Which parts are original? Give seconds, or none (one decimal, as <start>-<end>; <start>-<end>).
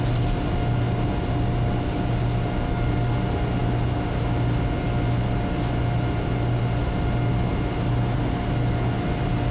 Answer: 0.0-9.5